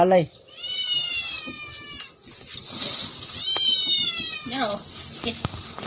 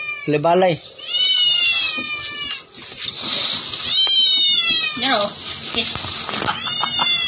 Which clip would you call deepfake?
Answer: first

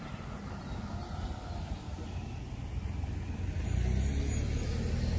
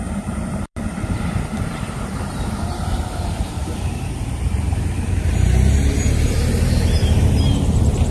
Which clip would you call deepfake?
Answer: second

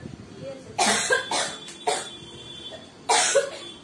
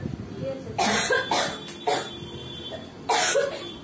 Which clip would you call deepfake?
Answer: first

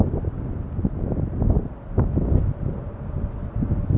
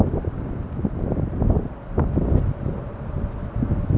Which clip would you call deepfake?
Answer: second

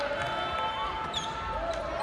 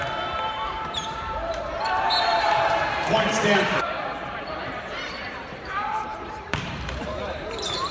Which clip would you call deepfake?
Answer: second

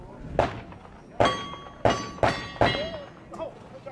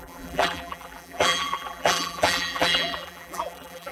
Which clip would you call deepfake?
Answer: second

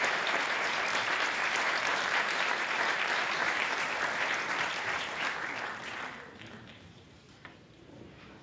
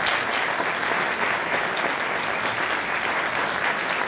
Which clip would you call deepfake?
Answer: first